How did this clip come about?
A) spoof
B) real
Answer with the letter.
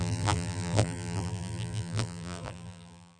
A